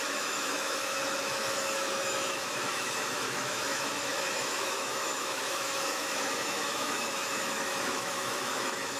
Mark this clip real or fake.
fake